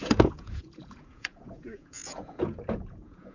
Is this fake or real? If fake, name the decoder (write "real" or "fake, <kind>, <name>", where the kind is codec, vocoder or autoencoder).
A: fake, vocoder, Vocos